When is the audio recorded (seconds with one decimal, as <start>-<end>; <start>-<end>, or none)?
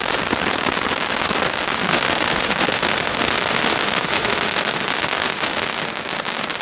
0.0-1.9; 5.7-6.6